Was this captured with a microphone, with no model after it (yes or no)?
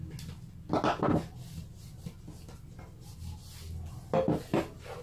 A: yes